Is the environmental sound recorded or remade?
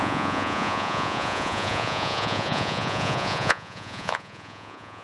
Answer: remade